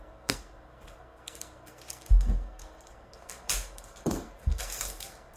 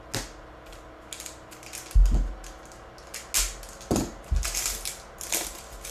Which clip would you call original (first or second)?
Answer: second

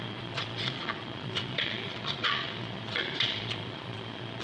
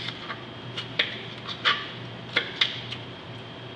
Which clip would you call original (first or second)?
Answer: second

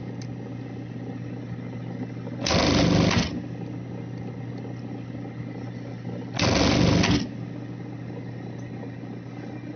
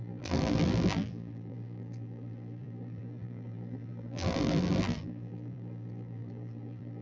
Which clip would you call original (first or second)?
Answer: first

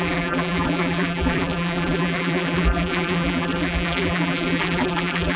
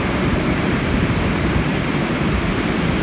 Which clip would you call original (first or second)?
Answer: second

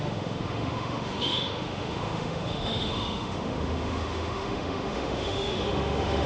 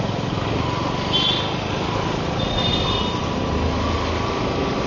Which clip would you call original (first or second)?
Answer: second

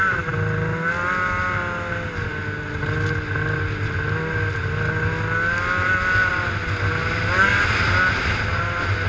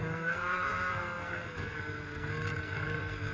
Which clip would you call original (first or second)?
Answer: first